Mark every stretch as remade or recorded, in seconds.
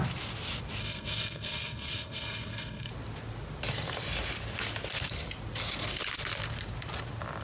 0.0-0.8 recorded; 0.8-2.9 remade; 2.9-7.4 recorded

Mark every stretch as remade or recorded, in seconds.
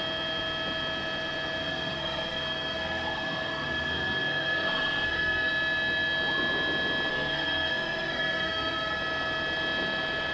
0.0-1.6 recorded; 1.6-5.5 remade; 5.5-7.1 recorded; 7.1-9.0 remade; 9.0-10.3 recorded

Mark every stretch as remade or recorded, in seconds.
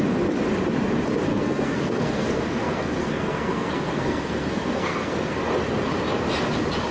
0.0-1.3 recorded; 1.3-5.4 remade; 5.4-6.9 recorded